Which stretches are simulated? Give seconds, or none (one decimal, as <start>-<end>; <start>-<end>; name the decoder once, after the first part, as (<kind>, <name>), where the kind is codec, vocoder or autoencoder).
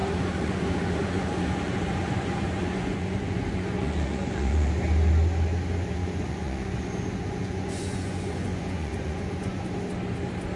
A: 0.0-4.7 (vocoder, Vocos); 6.0-9.6